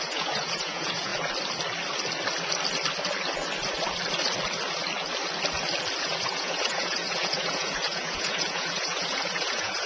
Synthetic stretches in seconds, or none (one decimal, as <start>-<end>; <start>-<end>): 0.0-1.1; 6.0-9.9